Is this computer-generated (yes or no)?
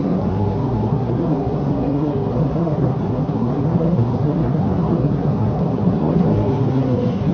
yes